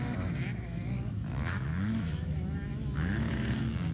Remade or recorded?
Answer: remade